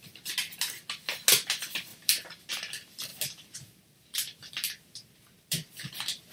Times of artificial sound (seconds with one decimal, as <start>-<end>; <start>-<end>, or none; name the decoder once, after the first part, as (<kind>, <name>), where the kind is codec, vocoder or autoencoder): 1.9-2.5 (vocoder, BigVGAN v2); 3.1-6.3